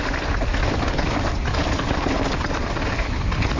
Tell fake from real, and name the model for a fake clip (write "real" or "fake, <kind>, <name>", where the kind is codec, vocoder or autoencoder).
real